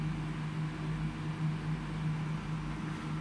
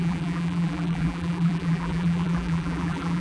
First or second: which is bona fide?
first